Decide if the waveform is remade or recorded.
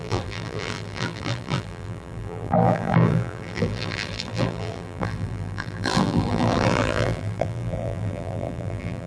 remade